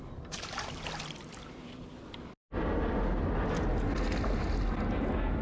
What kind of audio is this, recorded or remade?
recorded